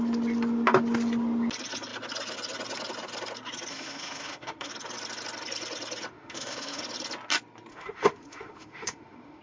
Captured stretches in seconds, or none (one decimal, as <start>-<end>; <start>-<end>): 0.0-3.7; 4.7-6.1; 6.8-7.7